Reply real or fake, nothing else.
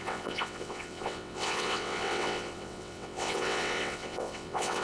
fake